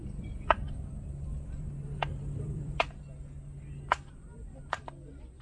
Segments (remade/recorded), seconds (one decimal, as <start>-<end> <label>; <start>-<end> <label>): 0.0-2.8 remade; 2.8-5.4 recorded